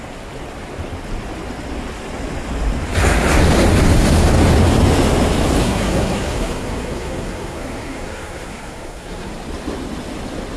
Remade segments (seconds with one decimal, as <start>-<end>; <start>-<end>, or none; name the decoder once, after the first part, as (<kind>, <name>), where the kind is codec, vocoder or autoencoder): 5.6-9.3 (codec, SNAC)